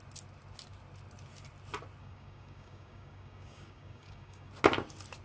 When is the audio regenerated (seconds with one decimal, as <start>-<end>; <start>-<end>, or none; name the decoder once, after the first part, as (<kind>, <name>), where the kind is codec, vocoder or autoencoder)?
2.0-4.5 (codec, DAC)